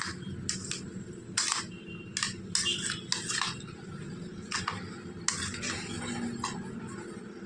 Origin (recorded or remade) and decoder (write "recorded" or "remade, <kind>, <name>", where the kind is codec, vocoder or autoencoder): recorded